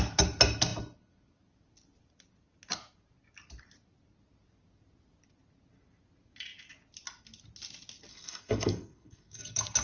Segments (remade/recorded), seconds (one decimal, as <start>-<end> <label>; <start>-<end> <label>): 0.0-8.1 recorded; 8.1-9.4 remade; 9.4-9.8 recorded